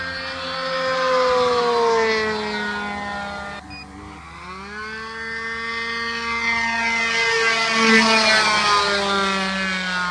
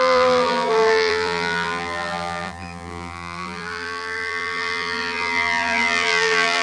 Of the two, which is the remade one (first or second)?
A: second